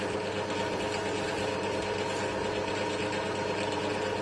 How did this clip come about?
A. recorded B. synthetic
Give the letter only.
A